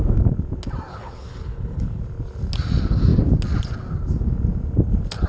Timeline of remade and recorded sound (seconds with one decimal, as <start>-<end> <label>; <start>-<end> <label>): 0.0-0.9 recorded; 0.9-2.0 remade; 2.0-5.3 recorded